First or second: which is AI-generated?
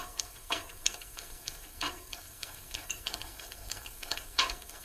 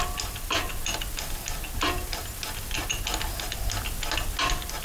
first